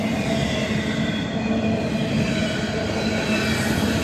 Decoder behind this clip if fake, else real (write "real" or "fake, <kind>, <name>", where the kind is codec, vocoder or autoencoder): real